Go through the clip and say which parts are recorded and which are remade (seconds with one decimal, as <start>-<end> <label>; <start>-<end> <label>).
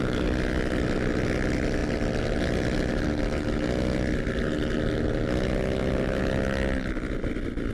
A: 0.0-7.7 recorded